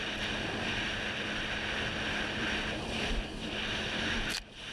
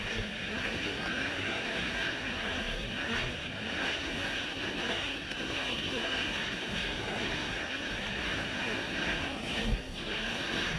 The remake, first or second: second